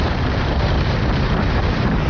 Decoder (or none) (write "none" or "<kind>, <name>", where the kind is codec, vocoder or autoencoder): vocoder, BigVGAN v2